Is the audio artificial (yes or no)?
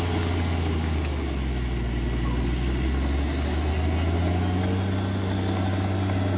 no